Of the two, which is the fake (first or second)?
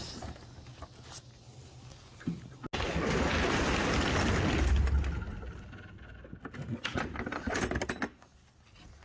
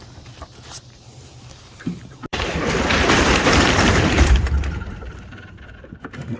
second